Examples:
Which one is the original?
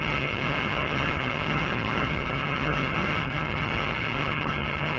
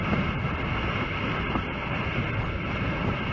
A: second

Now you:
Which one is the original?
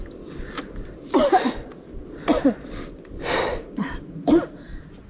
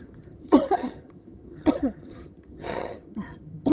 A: first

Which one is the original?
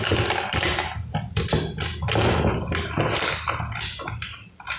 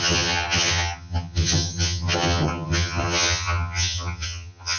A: first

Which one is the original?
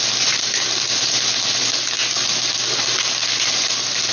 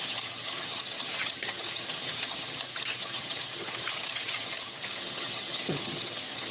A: first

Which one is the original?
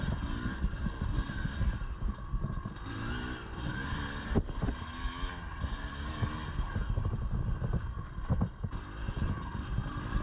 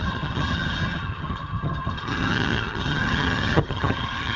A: first